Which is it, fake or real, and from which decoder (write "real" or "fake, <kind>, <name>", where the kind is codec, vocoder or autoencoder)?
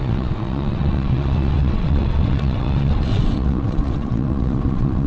fake, vocoder, WaveNeXt